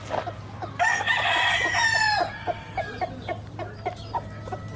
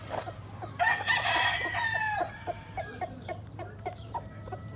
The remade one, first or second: second